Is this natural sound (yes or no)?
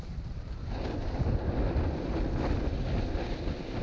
yes